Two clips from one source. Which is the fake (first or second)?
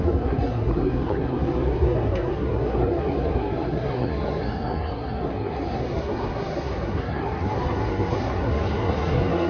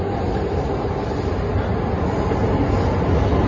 first